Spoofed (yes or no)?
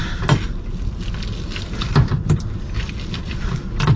no